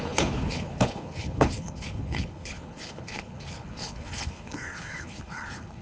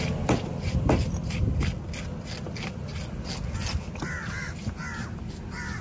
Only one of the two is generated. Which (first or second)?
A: first